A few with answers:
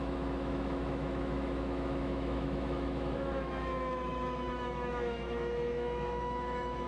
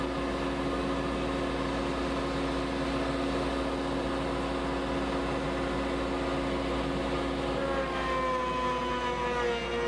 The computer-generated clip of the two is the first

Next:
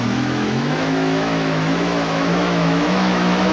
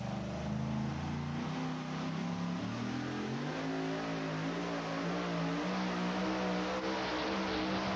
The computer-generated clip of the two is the first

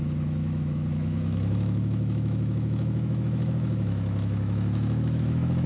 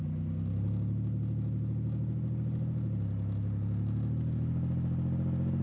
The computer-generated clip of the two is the first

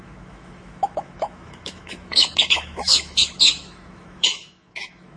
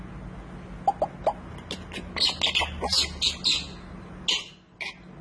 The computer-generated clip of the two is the first